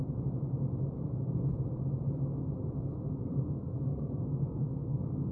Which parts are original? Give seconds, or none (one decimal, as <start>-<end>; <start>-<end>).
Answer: 0.0-3.2